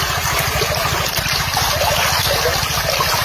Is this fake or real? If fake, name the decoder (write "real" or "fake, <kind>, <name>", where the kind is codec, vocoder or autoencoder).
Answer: real